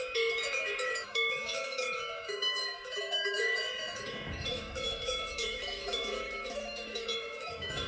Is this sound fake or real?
fake